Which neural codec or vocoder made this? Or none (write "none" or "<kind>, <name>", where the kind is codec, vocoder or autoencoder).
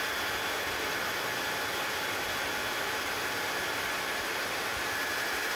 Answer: vocoder, BigVGAN v2